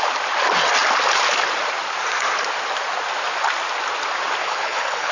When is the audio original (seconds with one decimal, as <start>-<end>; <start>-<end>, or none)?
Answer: 0.0-4.4